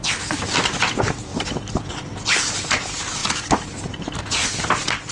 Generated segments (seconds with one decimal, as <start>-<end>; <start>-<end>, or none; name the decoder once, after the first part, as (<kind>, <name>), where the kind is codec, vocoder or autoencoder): 0.5-5.1 (vocoder, BigVGAN v2)